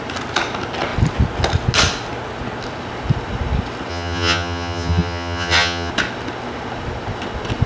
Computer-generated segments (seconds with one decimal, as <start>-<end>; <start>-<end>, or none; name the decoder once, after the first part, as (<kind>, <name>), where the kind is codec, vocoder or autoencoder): 3.9-5.9 (vocoder, HiFi-GAN)